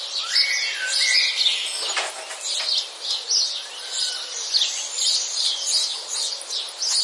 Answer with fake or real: real